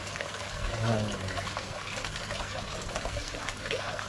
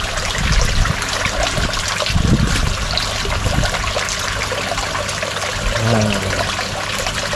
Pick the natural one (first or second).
second